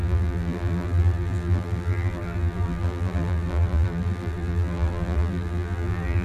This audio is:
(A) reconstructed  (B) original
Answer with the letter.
A